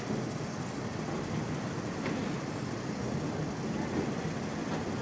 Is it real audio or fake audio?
real